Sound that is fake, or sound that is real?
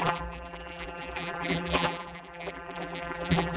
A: fake